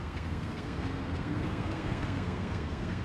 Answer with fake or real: fake